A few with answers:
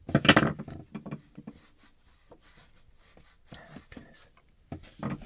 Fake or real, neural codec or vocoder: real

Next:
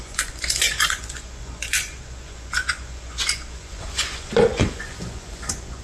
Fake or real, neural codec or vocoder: fake, vocoder, Vocos